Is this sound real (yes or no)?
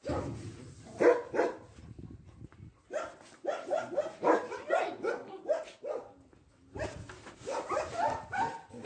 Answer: yes